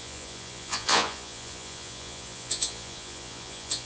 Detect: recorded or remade remade